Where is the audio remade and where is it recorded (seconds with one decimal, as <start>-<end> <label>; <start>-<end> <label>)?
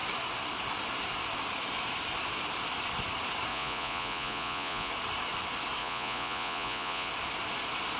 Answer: 0.0-3.5 recorded; 3.5-4.9 remade; 4.9-5.8 recorded; 5.8-7.1 remade; 7.1-8.0 recorded